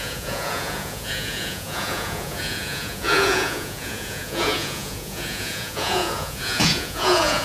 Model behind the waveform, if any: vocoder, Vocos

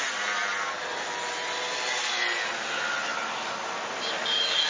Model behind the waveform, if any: none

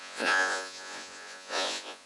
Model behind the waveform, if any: vocoder, Vocos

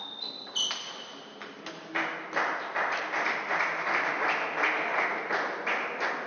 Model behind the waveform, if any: none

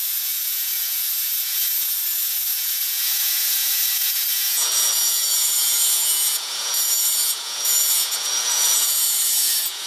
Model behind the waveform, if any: vocoder, Vocos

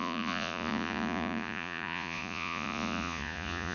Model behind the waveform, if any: vocoder, Vocos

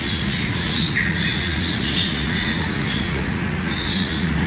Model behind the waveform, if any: vocoder, Vocos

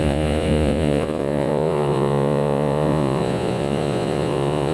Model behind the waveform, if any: vocoder, Vocos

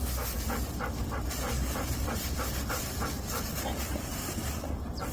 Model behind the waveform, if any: none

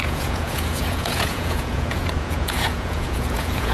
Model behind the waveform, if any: vocoder, Vocos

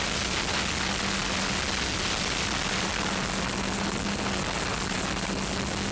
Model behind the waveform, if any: none